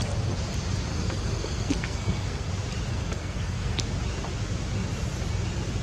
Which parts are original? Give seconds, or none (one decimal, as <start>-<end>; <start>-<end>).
0.0-0.9; 2.5-2.9; 3.8-5.8